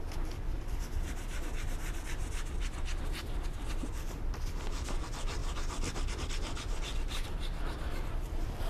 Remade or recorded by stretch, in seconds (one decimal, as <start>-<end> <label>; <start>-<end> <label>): 0.0-5.4 remade; 5.4-6.1 recorded; 6.1-8.7 remade